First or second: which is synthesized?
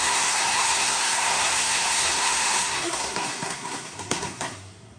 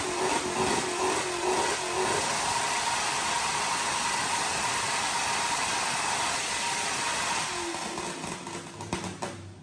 first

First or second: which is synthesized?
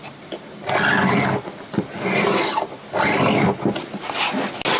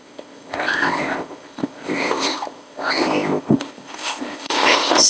second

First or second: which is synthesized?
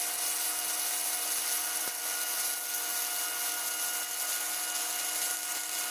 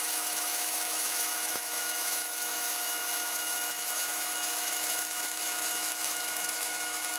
second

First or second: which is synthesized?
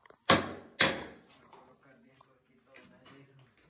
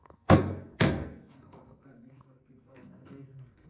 second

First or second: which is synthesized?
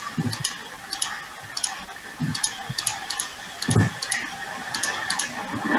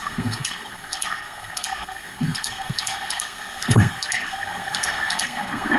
second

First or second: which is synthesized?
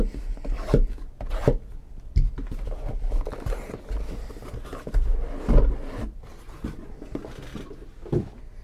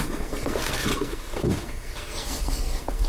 second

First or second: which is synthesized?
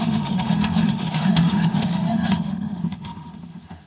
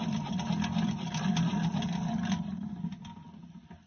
first